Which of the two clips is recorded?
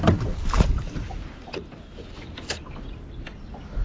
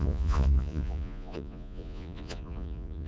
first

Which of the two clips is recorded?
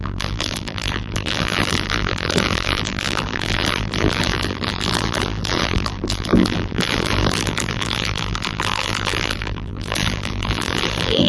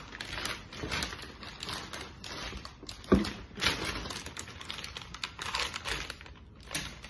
second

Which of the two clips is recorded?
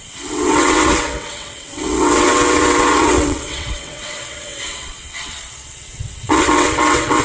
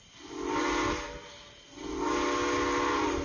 second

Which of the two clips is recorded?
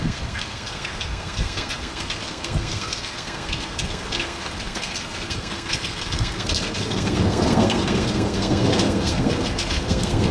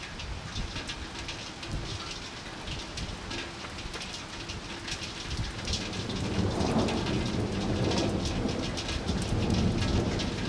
second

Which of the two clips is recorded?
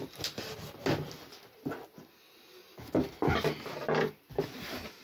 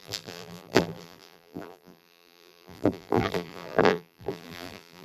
first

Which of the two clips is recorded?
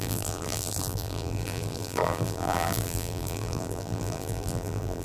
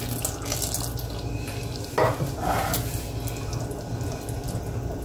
second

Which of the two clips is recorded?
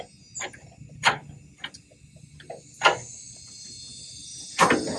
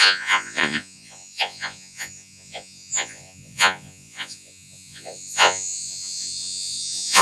first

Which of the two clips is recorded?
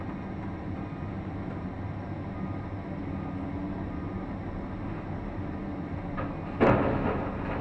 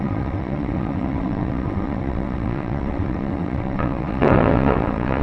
first